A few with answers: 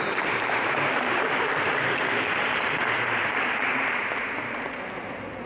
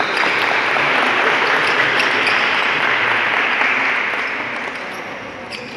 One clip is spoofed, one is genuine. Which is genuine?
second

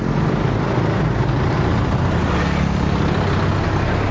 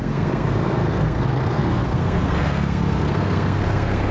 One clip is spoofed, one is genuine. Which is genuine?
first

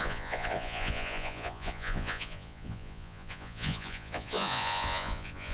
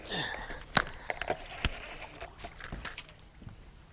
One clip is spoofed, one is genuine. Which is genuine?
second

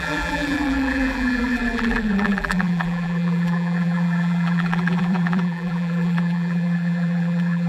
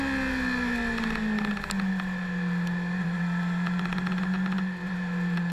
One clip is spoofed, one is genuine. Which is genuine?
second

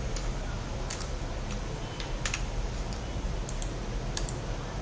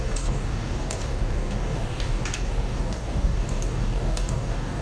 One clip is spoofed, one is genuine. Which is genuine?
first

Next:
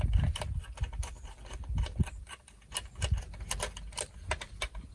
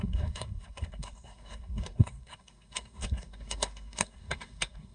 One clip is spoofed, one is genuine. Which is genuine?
first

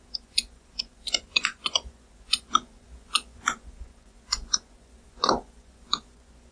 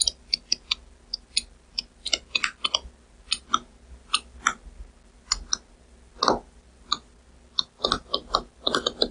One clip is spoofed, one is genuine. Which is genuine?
second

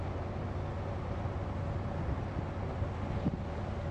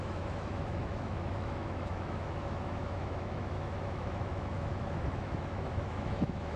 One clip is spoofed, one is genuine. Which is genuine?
first